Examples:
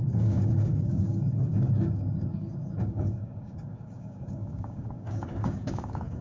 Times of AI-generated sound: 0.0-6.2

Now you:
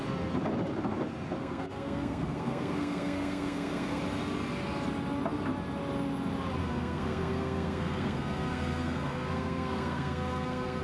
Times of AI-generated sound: 1.4-4.0; 6.6-10.8

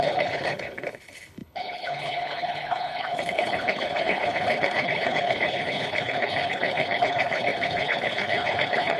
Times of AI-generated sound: 0.0-9.0

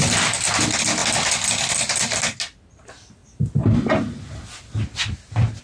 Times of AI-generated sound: none

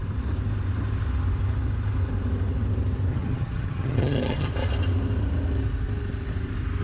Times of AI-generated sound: 3.1-4.5

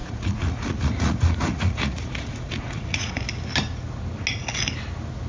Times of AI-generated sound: 0.0-3.2